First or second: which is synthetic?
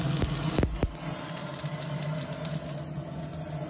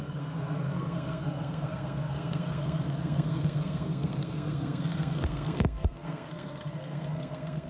second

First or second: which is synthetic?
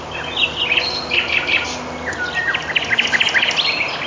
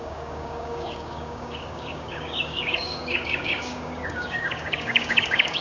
second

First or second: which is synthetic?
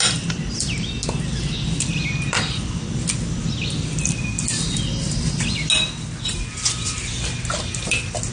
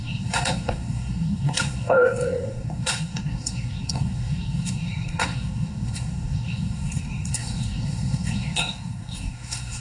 second